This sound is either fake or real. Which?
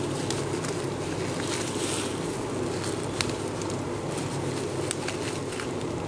real